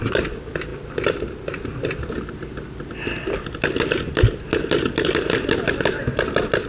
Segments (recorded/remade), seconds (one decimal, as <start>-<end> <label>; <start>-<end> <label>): 0.0-6.7 recorded